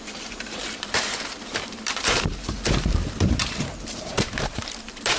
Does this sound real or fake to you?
fake